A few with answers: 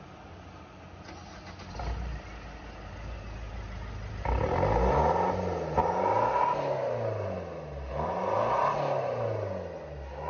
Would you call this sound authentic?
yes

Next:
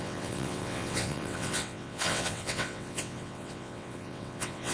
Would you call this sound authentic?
no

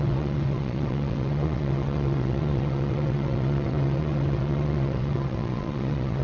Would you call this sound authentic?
no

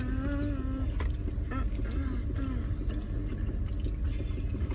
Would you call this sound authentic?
yes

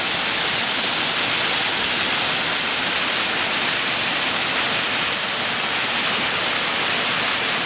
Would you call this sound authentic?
yes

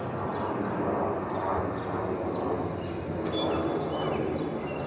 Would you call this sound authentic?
yes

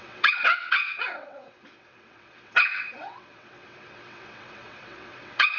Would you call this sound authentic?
no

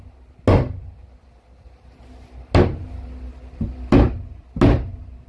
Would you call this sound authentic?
yes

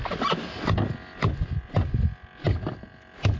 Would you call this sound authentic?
yes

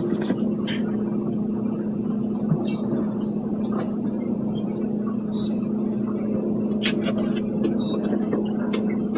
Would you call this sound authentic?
yes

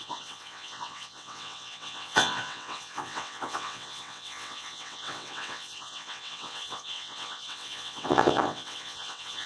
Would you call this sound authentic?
no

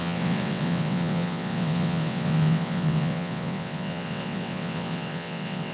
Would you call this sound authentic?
no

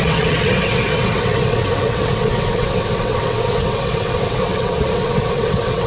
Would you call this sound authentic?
no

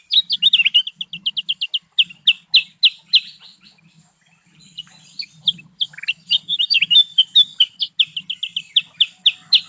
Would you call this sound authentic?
yes